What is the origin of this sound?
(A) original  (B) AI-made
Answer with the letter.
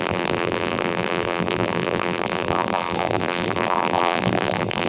B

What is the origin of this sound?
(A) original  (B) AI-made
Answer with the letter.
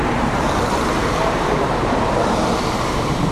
B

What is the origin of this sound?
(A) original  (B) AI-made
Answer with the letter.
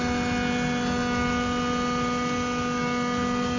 A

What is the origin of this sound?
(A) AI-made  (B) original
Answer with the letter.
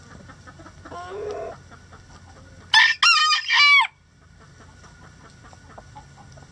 B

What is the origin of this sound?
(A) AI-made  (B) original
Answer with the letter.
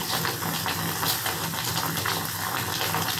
B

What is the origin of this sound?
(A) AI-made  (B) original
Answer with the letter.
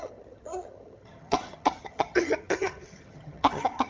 A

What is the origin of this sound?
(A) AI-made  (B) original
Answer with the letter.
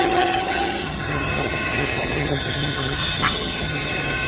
A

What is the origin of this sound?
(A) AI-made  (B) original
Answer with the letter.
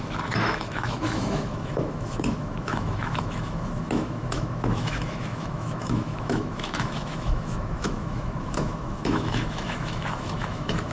A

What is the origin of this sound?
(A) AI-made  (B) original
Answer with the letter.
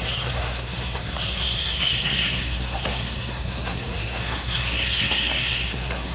A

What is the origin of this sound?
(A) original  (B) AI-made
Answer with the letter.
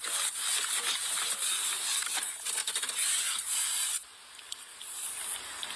A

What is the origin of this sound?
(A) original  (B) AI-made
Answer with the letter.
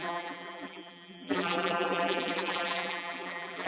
B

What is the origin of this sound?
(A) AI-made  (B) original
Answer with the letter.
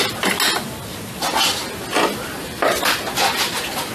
B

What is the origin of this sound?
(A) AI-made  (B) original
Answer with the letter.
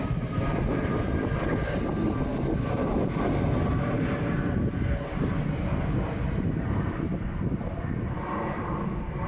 B